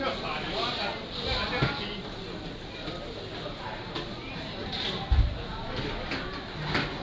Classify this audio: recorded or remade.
recorded